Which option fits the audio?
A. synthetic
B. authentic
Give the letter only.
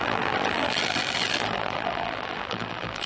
A